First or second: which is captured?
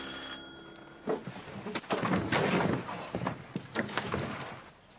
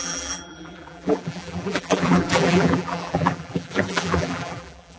first